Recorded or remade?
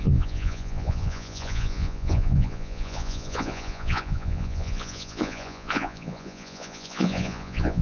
remade